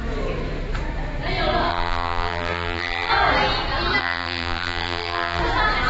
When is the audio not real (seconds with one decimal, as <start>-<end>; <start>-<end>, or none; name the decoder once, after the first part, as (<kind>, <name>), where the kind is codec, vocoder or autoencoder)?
1.7-3.1 (vocoder, BigVGAN v2); 4.0-5.4